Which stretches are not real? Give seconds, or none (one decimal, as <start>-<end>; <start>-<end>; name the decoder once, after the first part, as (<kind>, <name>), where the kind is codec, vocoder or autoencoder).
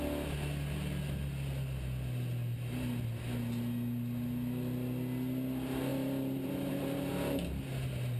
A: 5.9-7.1 (vocoder, BigVGAN v2)